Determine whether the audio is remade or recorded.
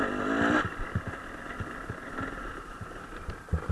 recorded